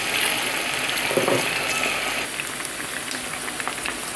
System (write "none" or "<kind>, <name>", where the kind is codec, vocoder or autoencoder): none